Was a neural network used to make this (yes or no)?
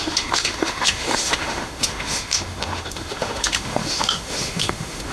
yes